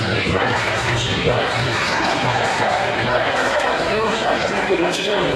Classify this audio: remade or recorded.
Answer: remade